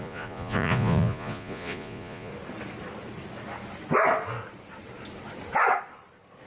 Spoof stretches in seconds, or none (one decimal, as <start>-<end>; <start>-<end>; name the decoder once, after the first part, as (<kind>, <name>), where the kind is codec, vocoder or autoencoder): 0.0-2.3 (vocoder, Vocos)